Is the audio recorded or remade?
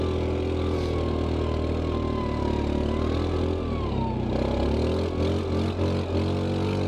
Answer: recorded